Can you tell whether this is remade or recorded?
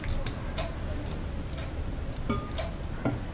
recorded